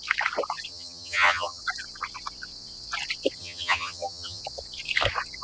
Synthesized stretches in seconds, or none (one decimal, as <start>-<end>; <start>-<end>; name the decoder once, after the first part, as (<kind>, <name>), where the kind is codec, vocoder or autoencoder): 0.7-1.6 (vocoder, HiFi-GAN); 3.4-4.4